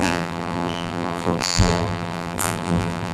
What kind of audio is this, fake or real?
fake